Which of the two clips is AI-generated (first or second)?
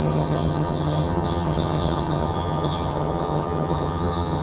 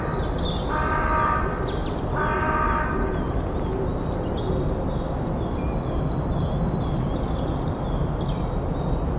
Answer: first